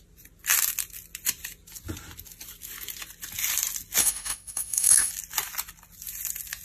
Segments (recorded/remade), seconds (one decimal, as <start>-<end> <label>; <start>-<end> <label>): 0.0-4.0 recorded; 4.0-5.1 remade; 5.1-6.6 recorded